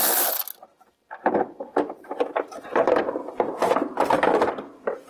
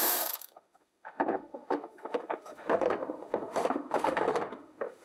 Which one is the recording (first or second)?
first